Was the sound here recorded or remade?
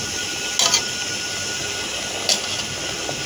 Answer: recorded